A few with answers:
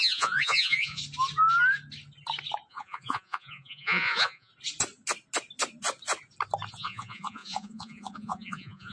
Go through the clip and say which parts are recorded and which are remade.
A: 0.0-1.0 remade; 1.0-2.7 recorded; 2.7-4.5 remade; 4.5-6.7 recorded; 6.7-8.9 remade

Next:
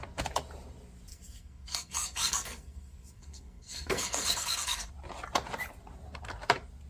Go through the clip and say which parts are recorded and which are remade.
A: 0.0-1.1 recorded; 1.1-4.9 remade; 4.9-6.9 recorded

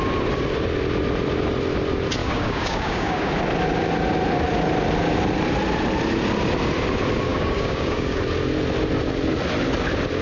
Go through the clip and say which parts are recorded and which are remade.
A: 0.0-2.2 recorded; 2.2-3.3 remade; 3.3-7.3 recorded; 7.3-8.2 remade; 8.2-10.2 recorded

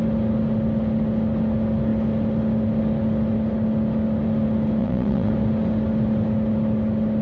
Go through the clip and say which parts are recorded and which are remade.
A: 0.0-4.8 recorded; 4.8-5.3 remade; 5.3-7.2 recorded